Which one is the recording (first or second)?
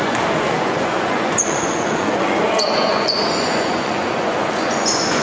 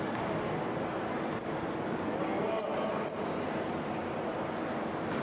second